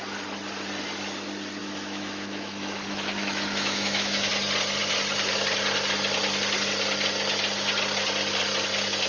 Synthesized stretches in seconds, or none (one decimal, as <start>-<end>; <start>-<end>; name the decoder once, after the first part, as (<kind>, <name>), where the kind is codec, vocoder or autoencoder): 1.6-4.3 (autoencoder, DAC-VAE)